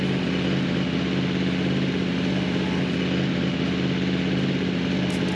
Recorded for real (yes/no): yes